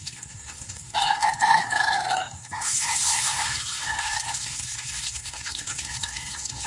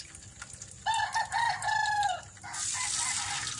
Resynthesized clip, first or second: first